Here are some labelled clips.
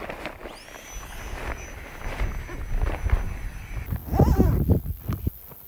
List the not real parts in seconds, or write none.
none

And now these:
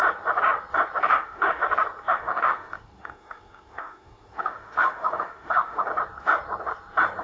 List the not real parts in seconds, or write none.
1.0-1.6 (autoencoder, DAC-VAE); 2.1-5.9

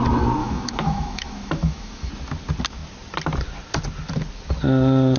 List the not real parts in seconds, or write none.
0.4-2.1 (autoencoder, DAC-VAE)

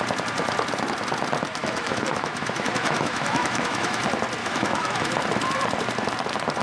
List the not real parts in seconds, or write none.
1.6-4.0 (autoencoder, DAC-VAE); 4.4-5.1